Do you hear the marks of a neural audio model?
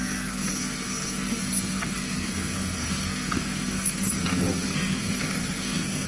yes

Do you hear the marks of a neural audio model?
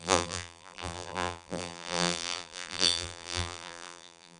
yes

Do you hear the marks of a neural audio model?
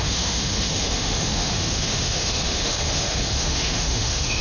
yes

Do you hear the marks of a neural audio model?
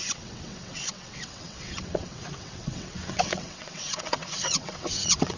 yes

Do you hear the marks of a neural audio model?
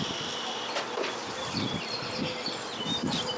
no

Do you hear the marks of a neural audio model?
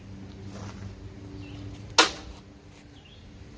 no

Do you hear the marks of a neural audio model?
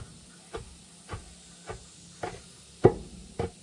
no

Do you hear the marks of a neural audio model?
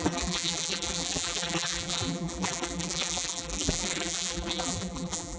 yes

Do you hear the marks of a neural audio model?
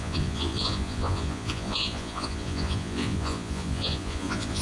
yes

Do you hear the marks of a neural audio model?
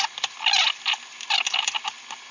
no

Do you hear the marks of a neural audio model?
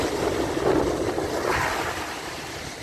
no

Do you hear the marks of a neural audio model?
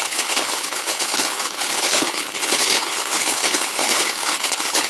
yes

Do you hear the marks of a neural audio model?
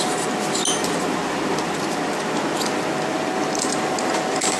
no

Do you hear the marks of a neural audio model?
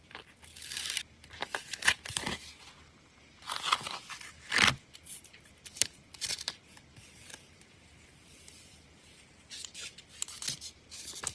no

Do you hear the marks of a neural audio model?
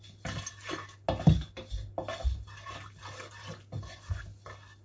no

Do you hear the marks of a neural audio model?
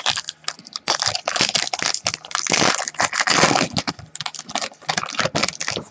no